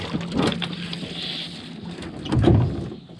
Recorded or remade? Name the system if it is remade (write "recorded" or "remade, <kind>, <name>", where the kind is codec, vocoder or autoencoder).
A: recorded